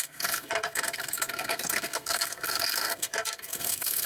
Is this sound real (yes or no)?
no